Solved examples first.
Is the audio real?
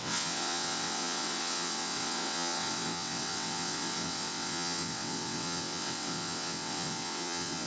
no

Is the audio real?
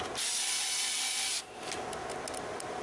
yes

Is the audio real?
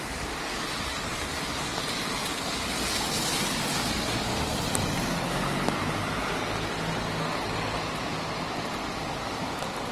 yes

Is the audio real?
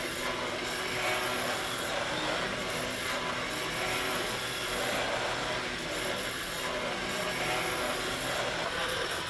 yes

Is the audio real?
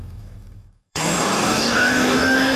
no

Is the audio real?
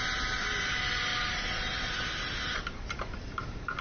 yes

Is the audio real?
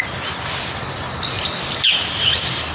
yes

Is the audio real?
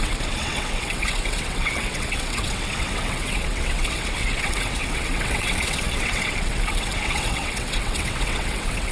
no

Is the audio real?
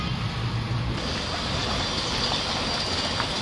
yes